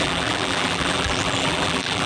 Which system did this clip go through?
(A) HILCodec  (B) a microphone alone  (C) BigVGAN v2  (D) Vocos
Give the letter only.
C